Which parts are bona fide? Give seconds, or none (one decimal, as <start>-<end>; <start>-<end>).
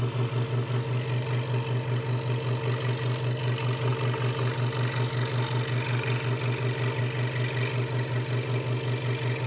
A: 0.0-9.5